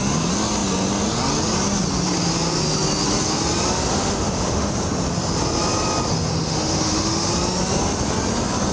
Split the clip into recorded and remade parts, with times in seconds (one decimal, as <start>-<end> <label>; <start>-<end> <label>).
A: 0.0-3.9 recorded; 3.9-4.7 remade; 4.7-6.3 recorded; 6.3-7.3 remade; 7.3-8.7 recorded